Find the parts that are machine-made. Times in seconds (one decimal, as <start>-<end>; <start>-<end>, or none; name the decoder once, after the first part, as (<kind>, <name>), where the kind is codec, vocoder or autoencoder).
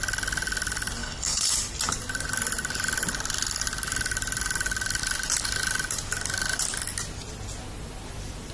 1.0-1.5 (codec, HILCodec)